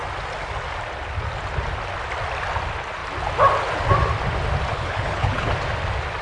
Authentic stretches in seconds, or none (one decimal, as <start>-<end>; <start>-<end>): 0.0-4.7; 5.5-6.2